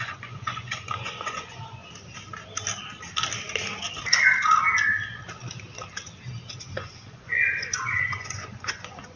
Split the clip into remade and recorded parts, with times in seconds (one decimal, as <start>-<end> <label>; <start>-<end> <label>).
0.0-1.8 remade; 1.8-6.6 recorded; 6.6-9.2 remade

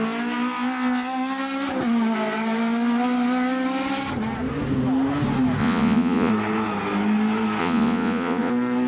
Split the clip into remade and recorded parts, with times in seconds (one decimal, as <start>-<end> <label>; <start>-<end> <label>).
0.0-5.6 recorded; 5.6-6.3 remade; 6.3-7.6 recorded; 7.6-8.5 remade; 8.5-8.9 recorded

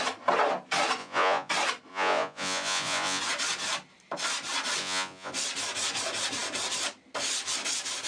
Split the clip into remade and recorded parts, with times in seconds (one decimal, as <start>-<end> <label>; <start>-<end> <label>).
0.0-1.0 recorded; 1.0-1.5 remade; 1.5-1.9 recorded; 1.9-3.2 remade; 3.2-4.8 recorded; 4.8-5.3 remade; 5.3-8.1 recorded